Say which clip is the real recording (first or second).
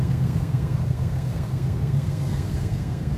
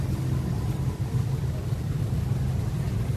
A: second